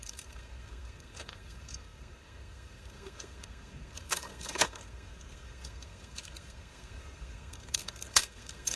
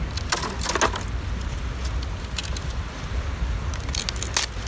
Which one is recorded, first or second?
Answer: second